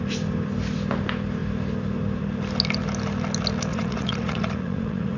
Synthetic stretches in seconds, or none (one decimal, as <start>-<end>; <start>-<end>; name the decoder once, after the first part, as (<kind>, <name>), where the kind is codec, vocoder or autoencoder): 3.7-5.2 (vocoder, Vocos)